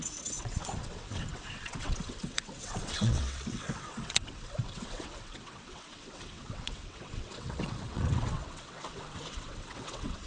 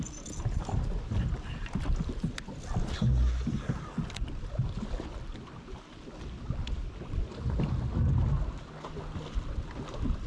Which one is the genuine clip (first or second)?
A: second